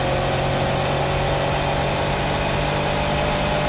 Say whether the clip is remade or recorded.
recorded